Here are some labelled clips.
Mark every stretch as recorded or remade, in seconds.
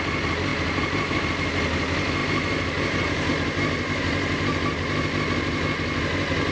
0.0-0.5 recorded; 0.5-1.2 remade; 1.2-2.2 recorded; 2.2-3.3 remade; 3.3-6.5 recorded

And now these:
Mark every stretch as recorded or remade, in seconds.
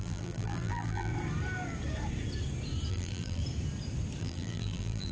0.0-1.1 remade; 1.1-2.9 recorded; 2.9-3.4 remade; 3.4-4.2 recorded; 4.2-5.1 remade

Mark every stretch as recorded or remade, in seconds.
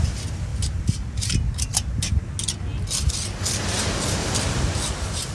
0.0-0.5 recorded; 0.5-2.1 remade; 2.1-4.2 recorded; 4.2-5.3 remade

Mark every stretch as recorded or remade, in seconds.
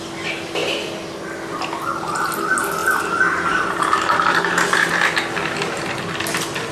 0.0-2.8 recorded; 2.8-4.9 remade; 4.9-6.7 recorded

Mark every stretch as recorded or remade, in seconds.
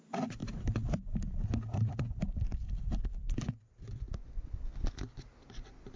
0.0-0.4 recorded; 0.4-3.5 remade; 3.5-6.0 recorded